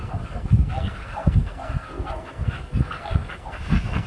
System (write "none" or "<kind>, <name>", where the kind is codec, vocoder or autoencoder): codec, SNAC